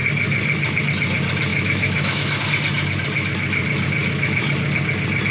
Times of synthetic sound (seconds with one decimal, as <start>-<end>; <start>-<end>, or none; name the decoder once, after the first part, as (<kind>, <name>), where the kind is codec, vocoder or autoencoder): 1.5-2.4 (autoencoder, DAC-VAE); 4.0-4.5